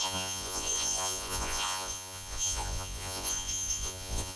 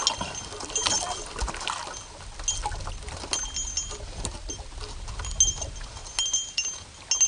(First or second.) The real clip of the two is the second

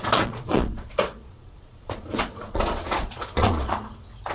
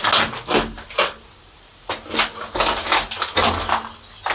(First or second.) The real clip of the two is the second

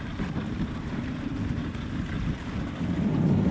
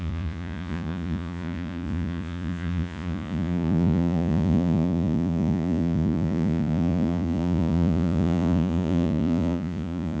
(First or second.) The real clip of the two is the first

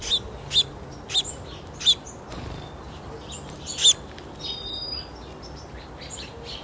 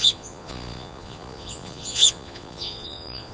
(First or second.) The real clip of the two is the first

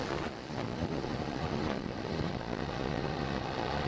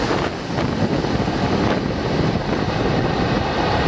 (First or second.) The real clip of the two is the second